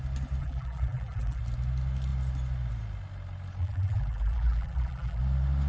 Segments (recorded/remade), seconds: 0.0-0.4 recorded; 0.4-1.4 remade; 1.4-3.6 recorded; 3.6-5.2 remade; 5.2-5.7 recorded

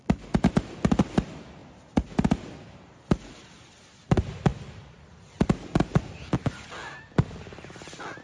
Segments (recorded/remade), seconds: 0.0-8.2 recorded